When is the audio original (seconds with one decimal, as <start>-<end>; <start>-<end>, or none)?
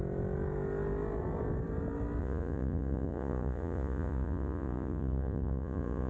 0.0-2.2